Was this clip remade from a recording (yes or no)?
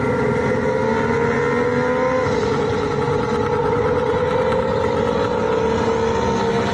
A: no